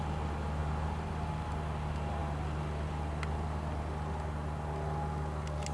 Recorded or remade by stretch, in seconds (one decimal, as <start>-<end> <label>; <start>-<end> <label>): 0.0-5.7 recorded